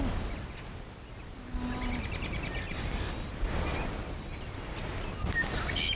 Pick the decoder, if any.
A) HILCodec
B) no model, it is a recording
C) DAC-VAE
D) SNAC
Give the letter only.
B